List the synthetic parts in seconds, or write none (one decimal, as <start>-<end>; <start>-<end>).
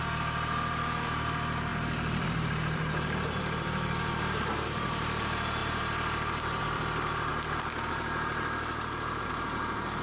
0.0-7.3; 7.9-10.0